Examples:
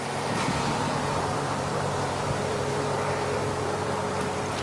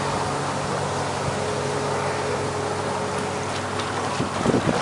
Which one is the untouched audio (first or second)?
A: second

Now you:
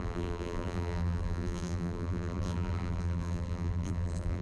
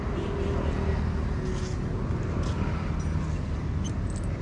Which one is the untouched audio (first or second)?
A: second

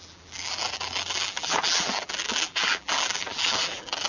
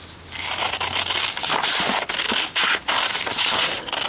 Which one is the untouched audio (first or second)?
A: second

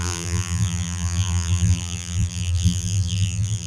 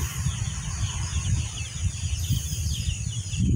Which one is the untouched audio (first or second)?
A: second